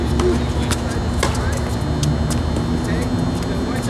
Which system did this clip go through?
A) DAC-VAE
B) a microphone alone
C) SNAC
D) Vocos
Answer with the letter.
B